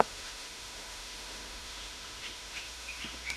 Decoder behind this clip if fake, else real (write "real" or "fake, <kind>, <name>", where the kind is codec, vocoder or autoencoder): fake, autoencoder, DAC-VAE